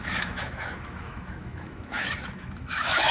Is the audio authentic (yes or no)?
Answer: no